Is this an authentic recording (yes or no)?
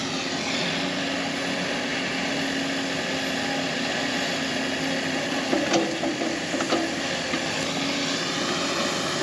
yes